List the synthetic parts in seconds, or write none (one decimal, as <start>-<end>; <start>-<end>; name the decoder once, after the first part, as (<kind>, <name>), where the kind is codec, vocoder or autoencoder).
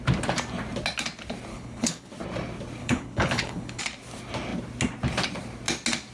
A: 1.5-2.1 (codec, HILCodec); 2.8-3.8